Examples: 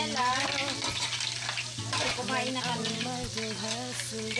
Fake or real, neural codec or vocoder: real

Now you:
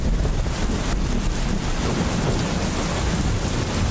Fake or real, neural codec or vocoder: real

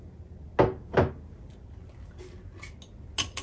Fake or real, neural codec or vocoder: real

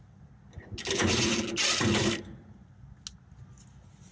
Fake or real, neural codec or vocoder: real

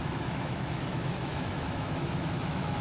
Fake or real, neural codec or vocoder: fake, autoencoder, DAC-VAE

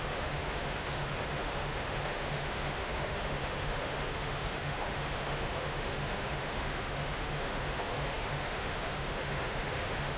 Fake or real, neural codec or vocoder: fake, autoencoder, DAC-VAE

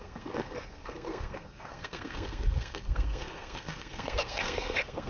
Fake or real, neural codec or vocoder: fake, codec, SNAC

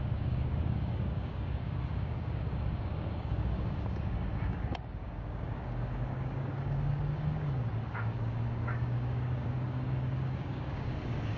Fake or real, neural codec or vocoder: fake, codec, DAC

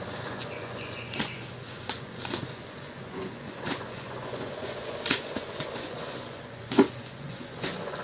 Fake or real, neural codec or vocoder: fake, vocoder, Vocos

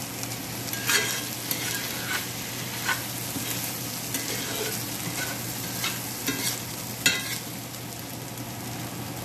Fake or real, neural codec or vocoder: real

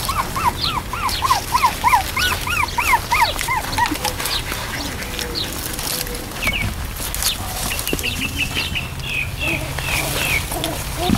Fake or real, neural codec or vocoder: real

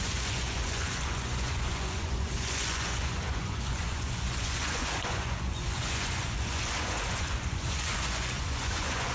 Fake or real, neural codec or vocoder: fake, vocoder, Vocos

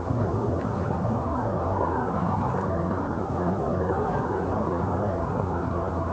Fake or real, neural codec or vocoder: fake, codec, SNAC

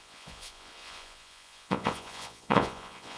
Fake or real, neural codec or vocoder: fake, vocoder, Vocos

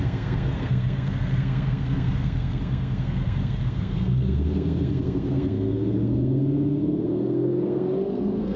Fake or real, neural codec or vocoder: fake, codec, SNAC